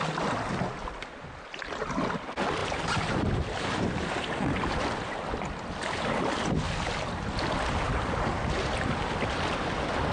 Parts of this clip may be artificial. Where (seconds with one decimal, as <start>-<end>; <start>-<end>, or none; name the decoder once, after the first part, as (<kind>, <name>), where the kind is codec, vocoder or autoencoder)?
none